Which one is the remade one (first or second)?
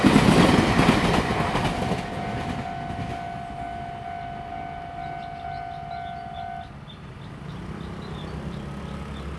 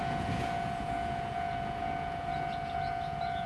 second